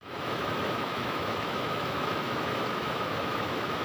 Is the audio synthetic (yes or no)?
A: yes